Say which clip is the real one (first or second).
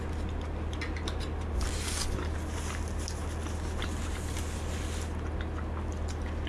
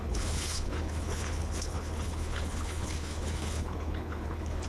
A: first